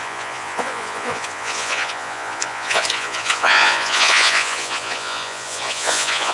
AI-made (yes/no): yes